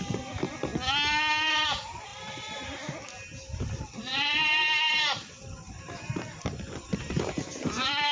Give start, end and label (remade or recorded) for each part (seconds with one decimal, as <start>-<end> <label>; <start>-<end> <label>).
0.0-0.7 remade; 0.7-1.5 recorded; 1.5-4.4 remade; 4.4-5.5 recorded; 5.5-8.1 remade